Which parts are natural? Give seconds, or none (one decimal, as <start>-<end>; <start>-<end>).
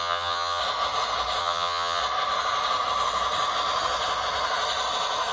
0.6-1.4; 2.0-5.3